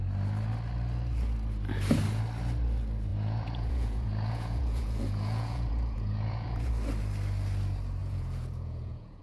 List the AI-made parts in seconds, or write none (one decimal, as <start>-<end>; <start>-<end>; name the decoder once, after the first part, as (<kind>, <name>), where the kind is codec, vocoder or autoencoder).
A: 3.1-6.7 (vocoder, Vocos); 8.0-9.2